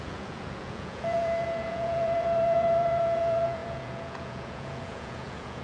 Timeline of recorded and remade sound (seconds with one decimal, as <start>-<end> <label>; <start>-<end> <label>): 0.0-5.6 remade